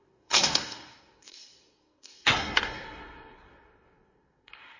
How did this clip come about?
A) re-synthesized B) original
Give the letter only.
A